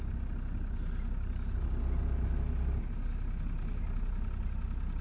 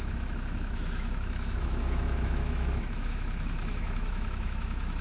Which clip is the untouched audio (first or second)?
first